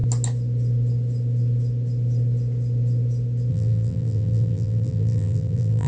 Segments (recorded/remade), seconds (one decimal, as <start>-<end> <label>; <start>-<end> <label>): 0.0-3.5 recorded; 3.5-5.9 remade